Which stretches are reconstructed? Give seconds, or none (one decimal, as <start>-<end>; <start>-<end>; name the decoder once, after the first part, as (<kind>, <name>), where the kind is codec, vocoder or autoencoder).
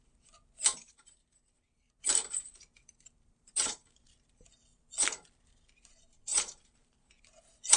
0.7-2.0 (vocoder, BigVGAN v2); 2.8-4.5; 6.3-7.1